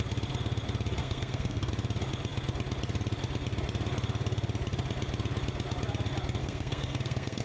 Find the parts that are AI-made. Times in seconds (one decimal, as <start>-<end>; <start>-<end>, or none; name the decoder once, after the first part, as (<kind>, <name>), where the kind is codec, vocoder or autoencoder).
1.0-1.7 (codec, SNAC); 6.4-7.4